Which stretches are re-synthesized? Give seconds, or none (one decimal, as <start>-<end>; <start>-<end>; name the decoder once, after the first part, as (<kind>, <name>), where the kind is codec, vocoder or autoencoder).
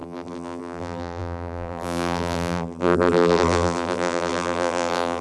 0.0-5.2 (vocoder, BigVGAN v2)